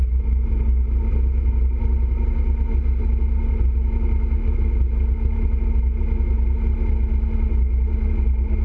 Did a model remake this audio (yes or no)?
no